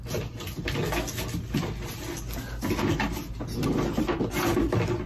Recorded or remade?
recorded